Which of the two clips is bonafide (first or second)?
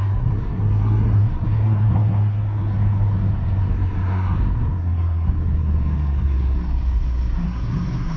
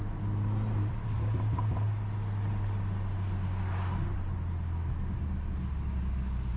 second